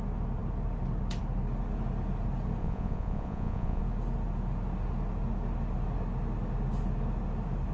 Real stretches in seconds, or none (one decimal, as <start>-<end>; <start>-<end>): 0.0-2.6; 3.8-7.7